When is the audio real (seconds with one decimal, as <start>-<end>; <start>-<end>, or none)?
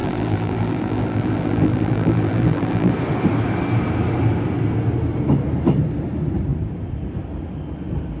2.9-8.2